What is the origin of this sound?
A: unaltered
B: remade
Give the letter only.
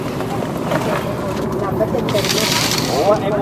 A